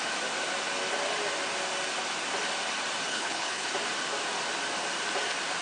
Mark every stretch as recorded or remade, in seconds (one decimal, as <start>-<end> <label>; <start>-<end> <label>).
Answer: 0.0-3.1 recorded; 3.1-3.7 remade; 3.7-5.6 recorded